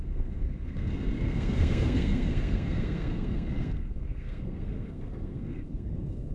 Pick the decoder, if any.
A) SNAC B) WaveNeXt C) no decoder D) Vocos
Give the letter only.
A